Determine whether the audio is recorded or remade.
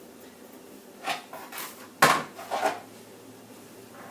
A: recorded